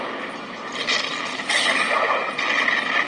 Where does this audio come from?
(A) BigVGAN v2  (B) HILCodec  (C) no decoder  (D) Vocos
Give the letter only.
C